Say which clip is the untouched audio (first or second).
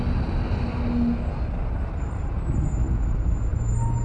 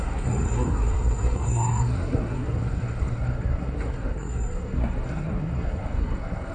first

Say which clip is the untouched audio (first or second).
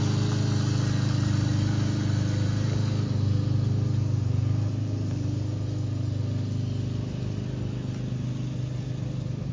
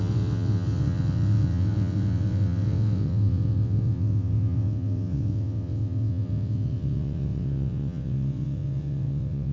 first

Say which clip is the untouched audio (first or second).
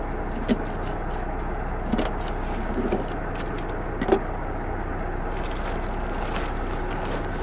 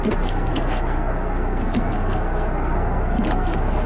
first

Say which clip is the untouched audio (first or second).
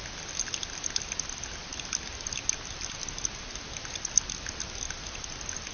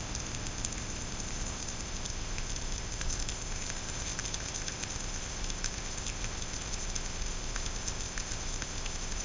first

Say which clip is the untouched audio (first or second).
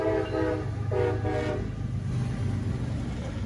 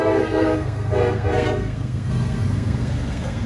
first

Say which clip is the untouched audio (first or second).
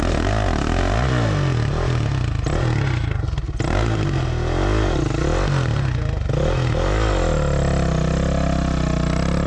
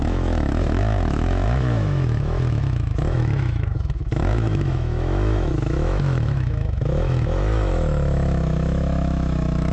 first